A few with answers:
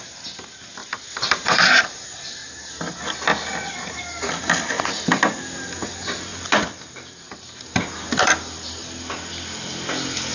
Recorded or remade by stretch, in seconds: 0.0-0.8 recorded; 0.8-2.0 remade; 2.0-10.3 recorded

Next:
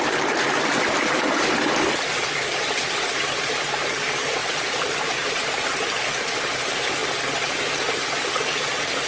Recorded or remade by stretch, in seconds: 0.0-4.4 recorded; 4.4-5.5 remade; 5.5-9.1 recorded